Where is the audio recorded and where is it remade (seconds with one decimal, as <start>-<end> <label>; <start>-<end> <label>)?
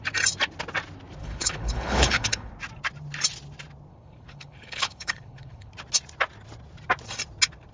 0.0-1.2 recorded; 1.2-2.5 remade; 2.5-3.9 recorded; 3.9-5.7 remade; 5.7-7.7 recorded